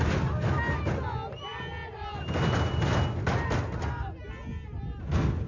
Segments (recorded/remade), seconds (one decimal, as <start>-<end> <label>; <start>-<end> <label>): 0.0-5.5 recorded